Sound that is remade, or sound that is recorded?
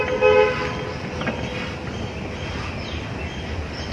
recorded